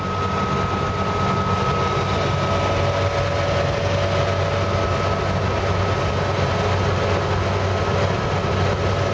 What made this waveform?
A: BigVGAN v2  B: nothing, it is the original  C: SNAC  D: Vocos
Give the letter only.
B